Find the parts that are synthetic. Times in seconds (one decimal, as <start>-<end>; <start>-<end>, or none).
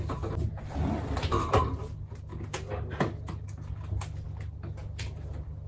0.0-1.5